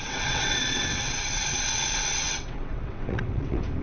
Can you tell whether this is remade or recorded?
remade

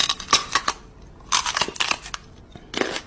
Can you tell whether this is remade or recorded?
recorded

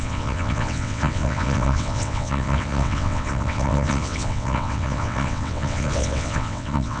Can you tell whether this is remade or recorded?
remade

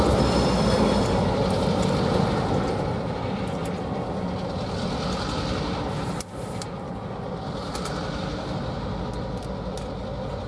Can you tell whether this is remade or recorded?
recorded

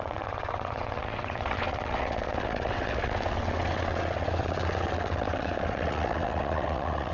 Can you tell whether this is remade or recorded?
remade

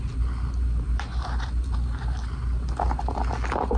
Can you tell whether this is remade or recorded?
recorded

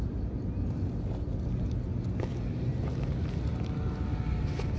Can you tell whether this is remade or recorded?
recorded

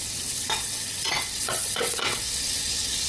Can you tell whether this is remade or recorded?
remade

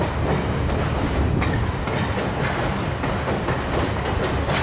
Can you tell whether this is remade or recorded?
recorded